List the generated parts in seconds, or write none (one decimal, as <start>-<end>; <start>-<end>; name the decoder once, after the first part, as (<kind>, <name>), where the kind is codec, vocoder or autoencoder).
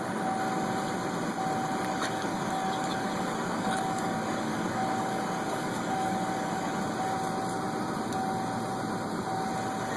1.9-6.7 (codec, DAC)